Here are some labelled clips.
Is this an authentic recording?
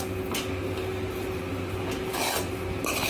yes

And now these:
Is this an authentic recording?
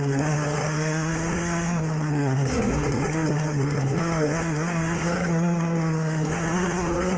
no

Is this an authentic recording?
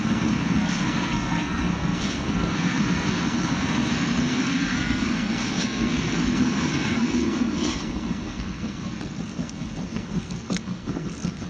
no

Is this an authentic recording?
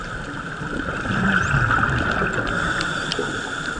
yes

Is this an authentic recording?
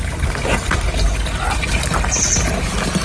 yes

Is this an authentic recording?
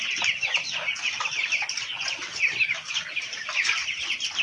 yes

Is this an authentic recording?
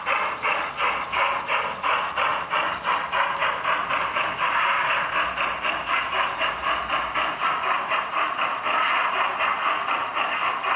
yes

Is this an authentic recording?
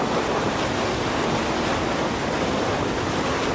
yes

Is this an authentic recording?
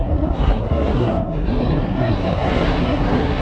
no